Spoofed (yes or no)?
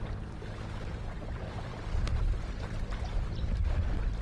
yes